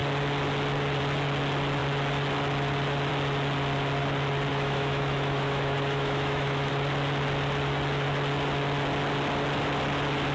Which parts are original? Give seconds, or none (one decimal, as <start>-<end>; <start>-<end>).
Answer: 0.0-4.5; 6.7-10.3

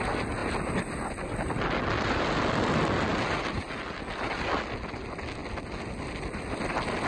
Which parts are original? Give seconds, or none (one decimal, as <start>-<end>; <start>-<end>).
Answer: 0.0-7.1

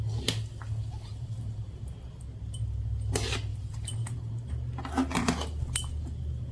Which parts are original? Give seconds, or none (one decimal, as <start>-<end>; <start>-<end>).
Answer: 0.0-1.1; 1.7-3.5; 4.3-6.5

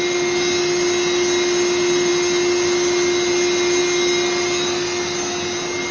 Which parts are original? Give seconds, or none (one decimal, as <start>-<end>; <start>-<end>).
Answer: 0.0-5.9

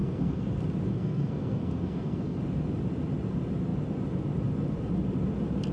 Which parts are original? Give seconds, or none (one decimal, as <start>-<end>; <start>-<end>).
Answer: 0.5-0.9; 2.4-5.7

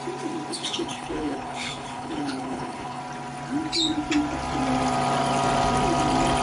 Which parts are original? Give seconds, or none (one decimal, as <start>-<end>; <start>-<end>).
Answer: 0.0-0.5; 3.0-6.4